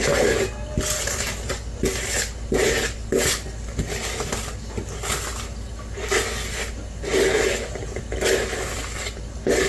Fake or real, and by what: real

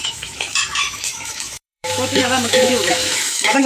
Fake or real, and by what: fake, autoencoder, DAC-VAE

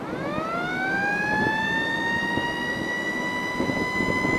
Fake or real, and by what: real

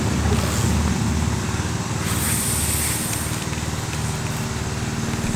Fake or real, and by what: real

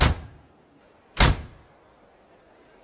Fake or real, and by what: real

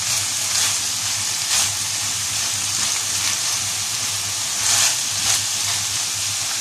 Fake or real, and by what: real